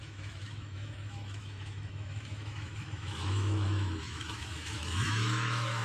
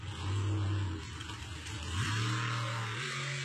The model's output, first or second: first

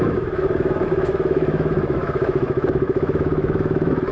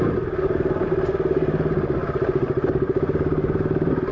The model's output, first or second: first